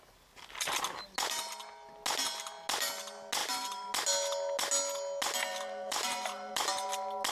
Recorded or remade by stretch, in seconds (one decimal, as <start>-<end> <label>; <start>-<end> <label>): 0.0-3.4 recorded; 3.4-3.9 remade; 3.9-5.5 recorded; 5.5-6.5 remade; 6.5-7.3 recorded